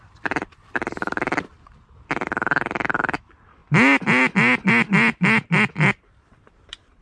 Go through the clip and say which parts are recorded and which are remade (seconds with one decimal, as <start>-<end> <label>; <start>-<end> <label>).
0.0-1.5 remade; 1.5-3.2 recorded; 3.2-3.6 remade; 3.6-4.7 recorded; 4.7-7.0 remade